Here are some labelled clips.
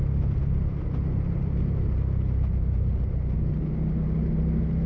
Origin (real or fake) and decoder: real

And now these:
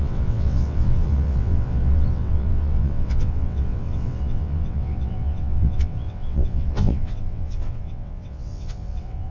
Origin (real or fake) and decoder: fake, vocoder, WaveNeXt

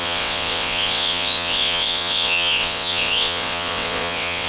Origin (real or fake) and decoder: fake, vocoder, WaveNeXt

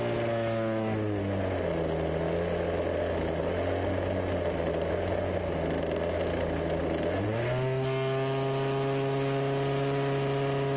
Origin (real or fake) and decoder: real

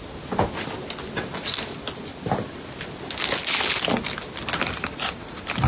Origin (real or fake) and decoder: real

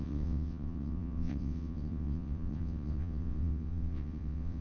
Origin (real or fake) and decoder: fake, vocoder, WaveNeXt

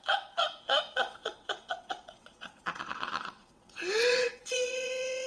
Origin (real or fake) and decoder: fake, vocoder, WaveNeXt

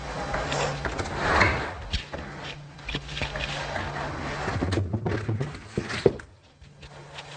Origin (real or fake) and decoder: real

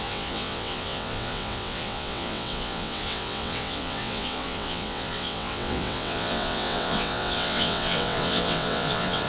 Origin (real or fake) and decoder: fake, vocoder, WaveNeXt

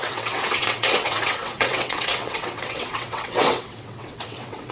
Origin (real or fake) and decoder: fake, vocoder, WaveNeXt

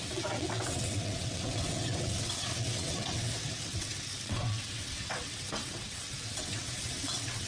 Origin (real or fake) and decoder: fake, vocoder, WaveNeXt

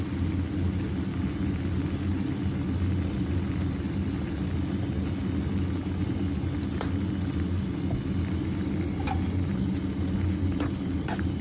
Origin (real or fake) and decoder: real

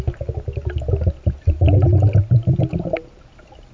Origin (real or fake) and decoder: real